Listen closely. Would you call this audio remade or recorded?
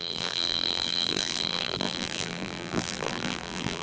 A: remade